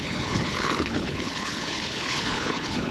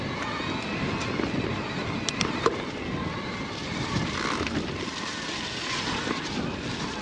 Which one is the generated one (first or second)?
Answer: first